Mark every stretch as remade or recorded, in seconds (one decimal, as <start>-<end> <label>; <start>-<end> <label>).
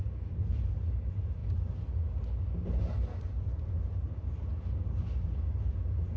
0.0-6.2 recorded